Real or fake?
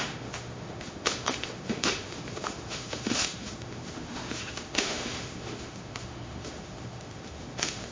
fake